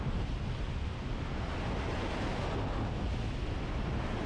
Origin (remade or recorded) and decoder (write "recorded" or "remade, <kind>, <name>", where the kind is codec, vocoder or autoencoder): recorded